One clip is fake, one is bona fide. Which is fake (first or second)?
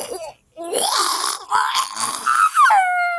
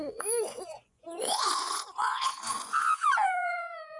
second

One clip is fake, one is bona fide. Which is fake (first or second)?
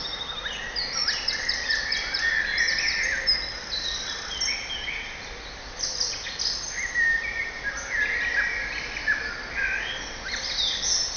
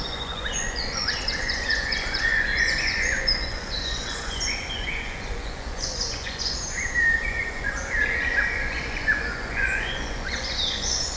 second